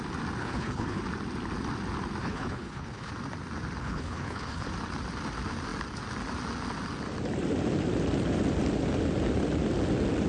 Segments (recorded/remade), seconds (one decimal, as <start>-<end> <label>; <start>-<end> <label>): 0.0-0.4 recorded; 0.4-1.0 remade; 1.0-2.2 recorded; 2.2-3.1 remade; 3.1-3.8 recorded; 3.8-4.7 remade; 4.7-10.3 recorded